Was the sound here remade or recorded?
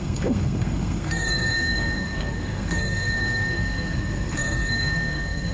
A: remade